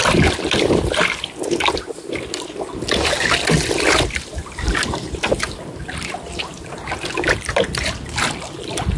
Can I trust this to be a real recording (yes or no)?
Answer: yes